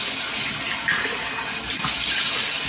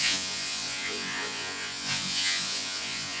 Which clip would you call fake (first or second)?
second